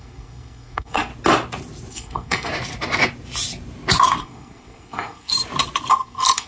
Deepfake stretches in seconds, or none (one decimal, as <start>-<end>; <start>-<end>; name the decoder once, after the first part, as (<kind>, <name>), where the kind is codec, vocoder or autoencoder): 0.0-1.1 (codec, SNAC); 1.9-2.5; 4.2-5.3; 5.9-6.5